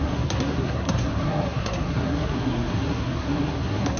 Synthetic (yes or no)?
yes